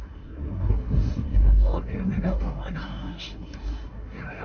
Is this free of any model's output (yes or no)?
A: no